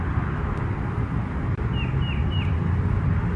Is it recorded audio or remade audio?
recorded